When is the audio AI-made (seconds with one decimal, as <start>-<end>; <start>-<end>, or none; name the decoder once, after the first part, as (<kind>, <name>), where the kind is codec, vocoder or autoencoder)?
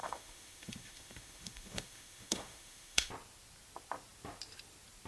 0.0-3.1 (autoencoder, DAC-VAE)